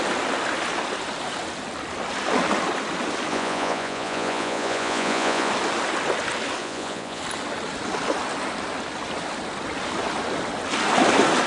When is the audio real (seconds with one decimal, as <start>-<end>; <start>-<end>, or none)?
0.0-3.3; 5.5-6.6; 7.2-11.5